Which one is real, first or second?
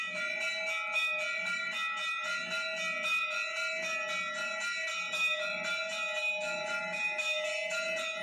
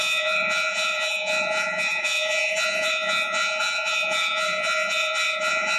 first